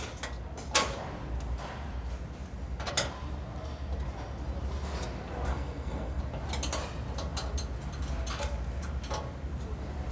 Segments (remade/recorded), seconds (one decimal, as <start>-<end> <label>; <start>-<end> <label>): 0.0-5.5 recorded; 5.5-6.2 remade; 6.2-10.1 recorded